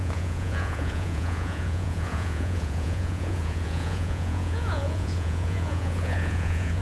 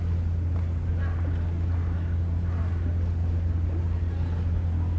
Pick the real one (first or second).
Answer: second